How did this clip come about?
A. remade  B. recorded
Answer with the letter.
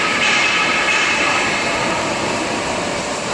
A